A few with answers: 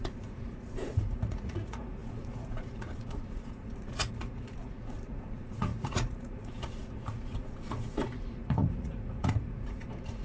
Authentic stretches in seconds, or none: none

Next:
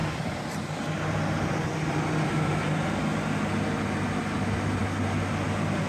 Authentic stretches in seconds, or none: 0.0-5.9